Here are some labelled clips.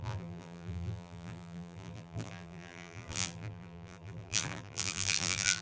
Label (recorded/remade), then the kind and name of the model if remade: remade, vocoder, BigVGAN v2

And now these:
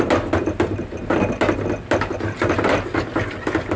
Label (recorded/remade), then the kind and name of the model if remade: recorded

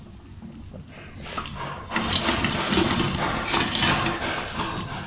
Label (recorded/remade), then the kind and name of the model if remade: recorded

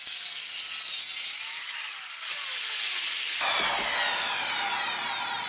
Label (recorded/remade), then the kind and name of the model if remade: recorded